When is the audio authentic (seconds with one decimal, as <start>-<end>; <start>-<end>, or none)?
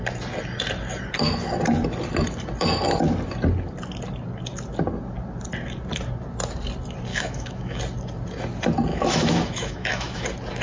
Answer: 0.0-7.1; 7.8-8.9; 10.2-10.6